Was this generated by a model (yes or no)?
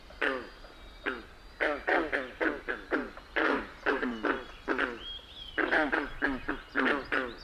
no